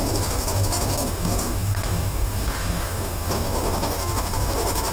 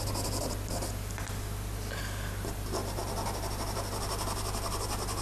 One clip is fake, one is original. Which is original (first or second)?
second